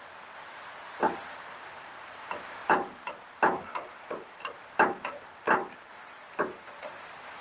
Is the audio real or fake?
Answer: real